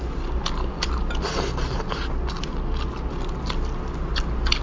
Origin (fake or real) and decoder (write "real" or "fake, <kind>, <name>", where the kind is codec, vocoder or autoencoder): real